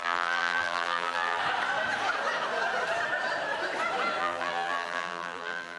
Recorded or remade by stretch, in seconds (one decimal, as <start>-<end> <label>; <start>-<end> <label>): 0.0-1.4 remade; 1.4-4.2 recorded; 4.2-5.8 remade